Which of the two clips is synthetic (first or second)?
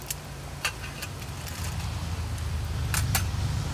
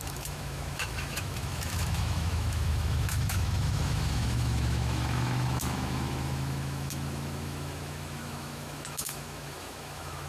second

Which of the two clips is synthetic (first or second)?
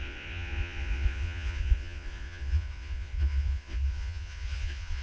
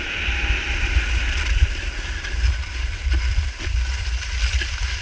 first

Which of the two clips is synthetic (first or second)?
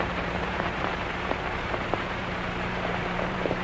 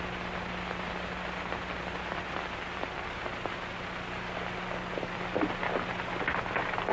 first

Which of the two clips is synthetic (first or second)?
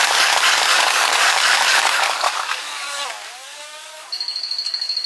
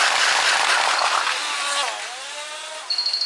first